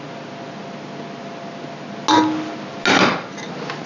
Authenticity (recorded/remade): recorded